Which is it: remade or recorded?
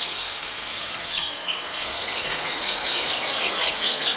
remade